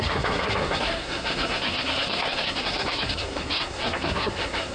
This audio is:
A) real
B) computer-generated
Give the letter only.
B